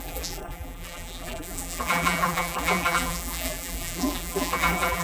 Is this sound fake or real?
fake